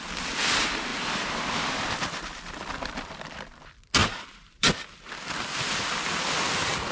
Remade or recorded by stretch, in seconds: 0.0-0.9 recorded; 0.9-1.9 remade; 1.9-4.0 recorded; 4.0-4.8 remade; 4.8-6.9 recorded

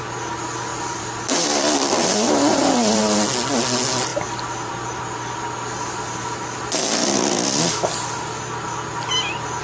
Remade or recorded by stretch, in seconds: 0.0-0.7 recorded; 0.7-3.0 remade; 3.0-4.1 recorded; 4.1-4.9 remade; 4.9-9.6 recorded